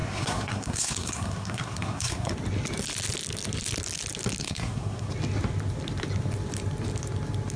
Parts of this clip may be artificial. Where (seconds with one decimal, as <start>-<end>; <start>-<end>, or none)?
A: 0.0-2.3; 4.4-5.1